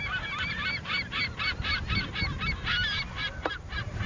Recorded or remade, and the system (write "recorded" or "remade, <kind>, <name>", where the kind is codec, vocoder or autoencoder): remade, vocoder, BigVGAN v2